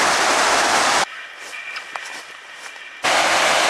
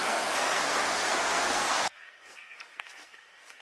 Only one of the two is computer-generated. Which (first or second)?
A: second